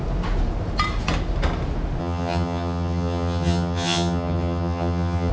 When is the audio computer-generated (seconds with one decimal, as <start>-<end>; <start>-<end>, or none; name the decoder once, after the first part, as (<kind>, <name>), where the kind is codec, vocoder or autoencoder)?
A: 2.0-5.3 (vocoder, HiFi-GAN)